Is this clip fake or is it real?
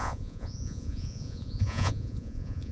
fake